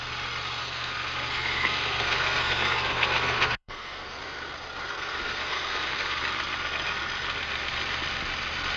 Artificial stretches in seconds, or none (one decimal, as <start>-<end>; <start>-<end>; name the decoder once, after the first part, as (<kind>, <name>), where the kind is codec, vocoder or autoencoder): 0.6-4.2 (codec, SNAC); 4.9-6.2